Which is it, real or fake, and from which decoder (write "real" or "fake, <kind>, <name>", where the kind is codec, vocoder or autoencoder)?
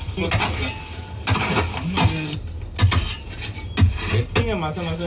real